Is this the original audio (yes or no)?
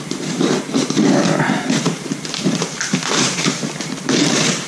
no